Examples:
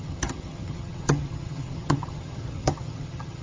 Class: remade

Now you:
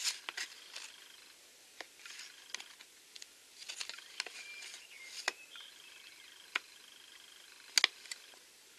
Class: recorded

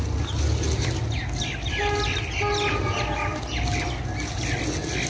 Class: recorded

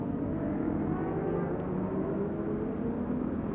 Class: recorded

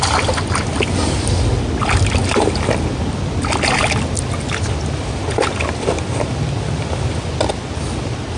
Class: recorded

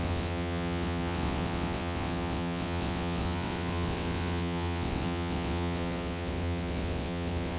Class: remade